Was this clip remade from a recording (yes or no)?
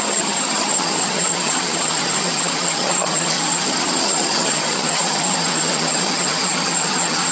yes